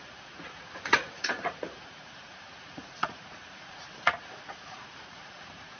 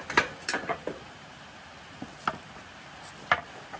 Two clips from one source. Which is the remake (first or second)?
first